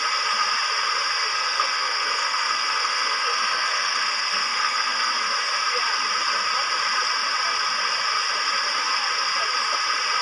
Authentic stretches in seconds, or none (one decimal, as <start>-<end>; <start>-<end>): 0.0-1.3; 5.1-10.2